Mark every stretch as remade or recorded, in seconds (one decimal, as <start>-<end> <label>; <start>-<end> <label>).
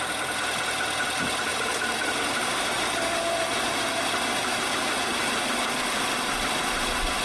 0.0-1.5 recorded; 1.5-3.8 remade; 3.8-4.4 recorded; 4.4-6.4 remade; 6.4-7.2 recorded